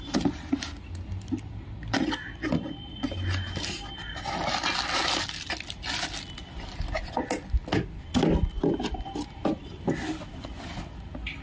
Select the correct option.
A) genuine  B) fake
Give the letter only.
A